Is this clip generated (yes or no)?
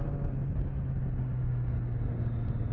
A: no